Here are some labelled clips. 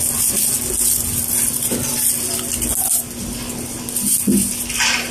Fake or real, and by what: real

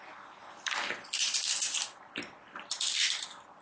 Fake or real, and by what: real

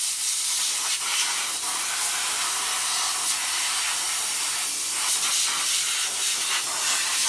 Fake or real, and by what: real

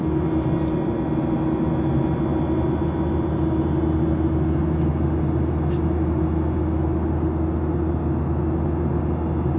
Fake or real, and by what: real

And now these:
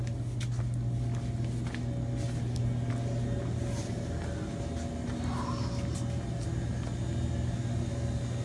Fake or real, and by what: real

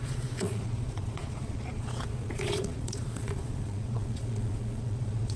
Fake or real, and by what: fake, vocoder, Vocos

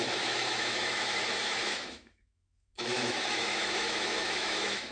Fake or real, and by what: fake, autoencoder, DAC-VAE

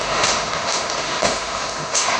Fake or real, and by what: fake, autoencoder, DAC-VAE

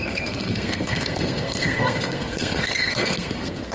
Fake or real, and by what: fake, codec, SNAC